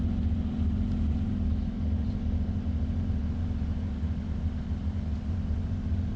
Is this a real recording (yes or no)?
yes